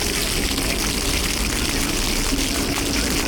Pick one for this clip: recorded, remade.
recorded